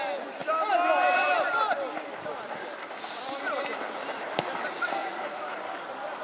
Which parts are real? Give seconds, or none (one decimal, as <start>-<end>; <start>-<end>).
0.0-5.0; 5.6-6.2